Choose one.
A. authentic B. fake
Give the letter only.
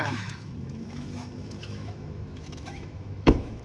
B